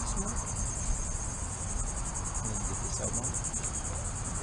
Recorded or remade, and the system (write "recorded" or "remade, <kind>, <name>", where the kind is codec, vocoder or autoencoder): recorded